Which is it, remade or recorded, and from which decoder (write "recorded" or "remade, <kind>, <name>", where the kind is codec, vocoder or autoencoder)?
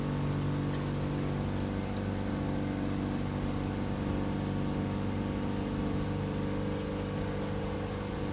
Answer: recorded